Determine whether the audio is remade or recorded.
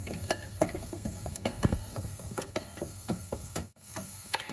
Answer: remade